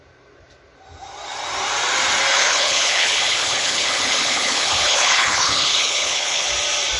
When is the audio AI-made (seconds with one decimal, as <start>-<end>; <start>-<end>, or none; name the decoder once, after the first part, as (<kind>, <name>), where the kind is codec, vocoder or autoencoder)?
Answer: 2.3-6.5 (codec, HILCodec)